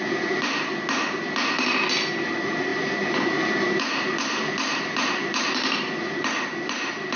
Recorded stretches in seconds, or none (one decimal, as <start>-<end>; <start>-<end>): 0.7-2.1